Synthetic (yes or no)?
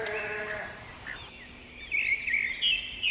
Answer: no